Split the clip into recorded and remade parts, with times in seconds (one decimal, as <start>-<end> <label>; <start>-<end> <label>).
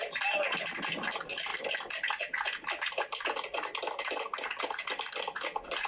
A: 0.0-5.9 recorded